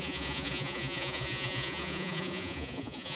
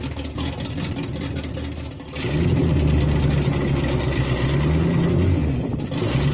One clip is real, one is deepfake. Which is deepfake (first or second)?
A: first